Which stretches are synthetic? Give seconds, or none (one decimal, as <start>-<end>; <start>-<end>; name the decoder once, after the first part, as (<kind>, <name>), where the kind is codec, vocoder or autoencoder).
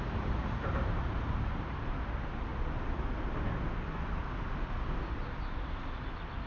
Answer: 0.0-2.5 (vocoder, BigVGAN v2)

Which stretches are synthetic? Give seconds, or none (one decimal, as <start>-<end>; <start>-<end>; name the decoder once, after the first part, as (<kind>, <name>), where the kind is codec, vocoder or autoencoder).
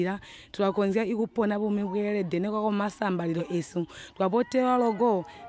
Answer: 0.0-1.2 (autoencoder, DAC-VAE); 3.4-4.0; 5.0-5.5